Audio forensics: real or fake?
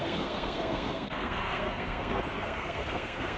fake